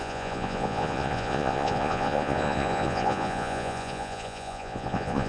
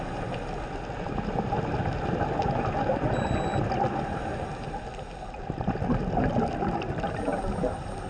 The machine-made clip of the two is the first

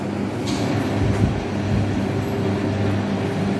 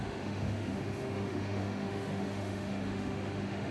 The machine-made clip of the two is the second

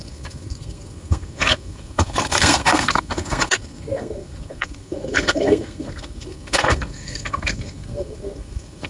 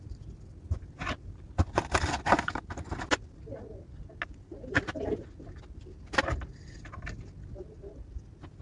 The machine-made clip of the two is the first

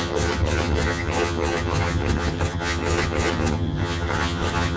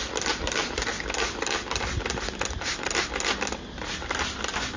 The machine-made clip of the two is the first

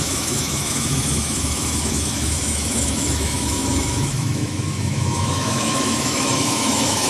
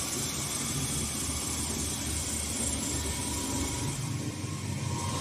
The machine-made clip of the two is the first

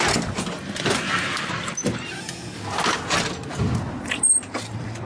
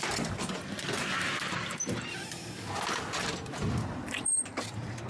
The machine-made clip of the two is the second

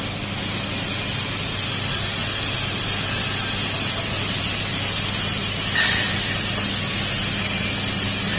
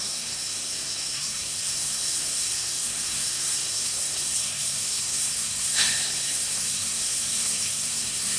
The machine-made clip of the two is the second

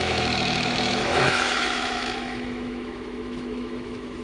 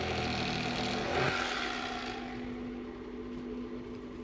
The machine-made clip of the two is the first